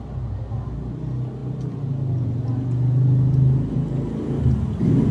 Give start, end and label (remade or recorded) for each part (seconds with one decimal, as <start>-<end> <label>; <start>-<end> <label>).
0.0-5.1 recorded